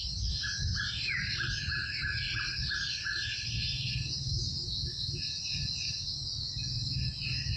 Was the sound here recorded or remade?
recorded